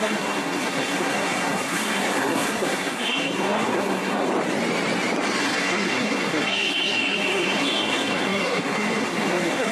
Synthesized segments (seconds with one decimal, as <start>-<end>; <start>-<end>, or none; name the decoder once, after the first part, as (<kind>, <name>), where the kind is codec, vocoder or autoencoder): 0.0-4.3 (codec, SNAC); 5.4-9.7